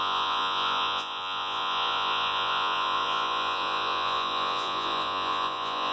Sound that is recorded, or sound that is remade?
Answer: remade